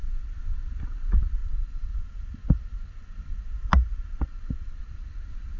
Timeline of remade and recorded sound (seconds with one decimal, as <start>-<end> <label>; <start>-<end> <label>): 0.0-1.4 recorded; 1.4-4.8 remade; 4.8-5.6 recorded